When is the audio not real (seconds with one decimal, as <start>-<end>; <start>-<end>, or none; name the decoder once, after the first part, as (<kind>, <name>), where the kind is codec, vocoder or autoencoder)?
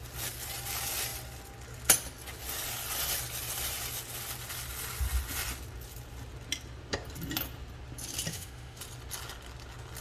8.3-8.8 (autoencoder, DAC-VAE)